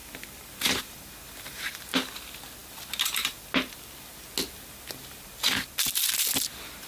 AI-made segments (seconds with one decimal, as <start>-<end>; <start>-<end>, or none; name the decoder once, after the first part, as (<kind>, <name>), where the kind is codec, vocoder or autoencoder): none